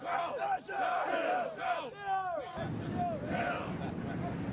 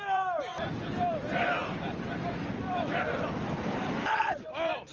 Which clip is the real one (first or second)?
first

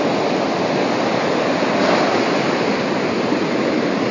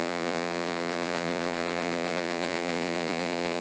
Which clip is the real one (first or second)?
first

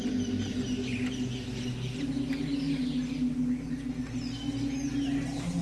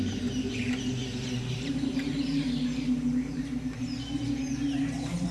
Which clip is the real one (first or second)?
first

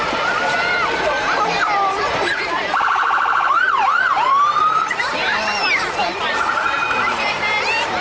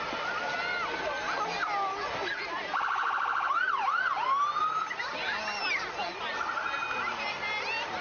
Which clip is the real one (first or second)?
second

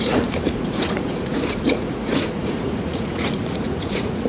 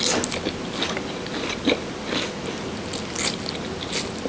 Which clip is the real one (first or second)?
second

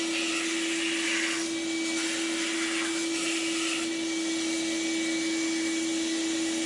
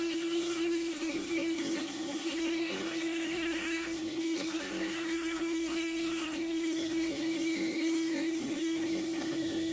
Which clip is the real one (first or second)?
first